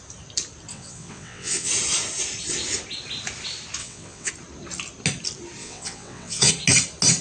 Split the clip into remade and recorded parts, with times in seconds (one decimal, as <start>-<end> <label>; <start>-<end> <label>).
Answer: 0.0-0.7 recorded; 0.7-1.7 remade; 1.7-3.8 recorded; 3.8-4.3 remade; 4.3-5.6 recorded; 5.6-6.5 remade; 6.5-7.2 recorded